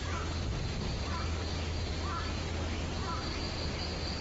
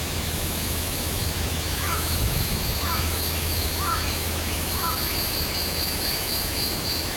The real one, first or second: first